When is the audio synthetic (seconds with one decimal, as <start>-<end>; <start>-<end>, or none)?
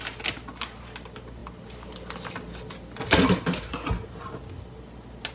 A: none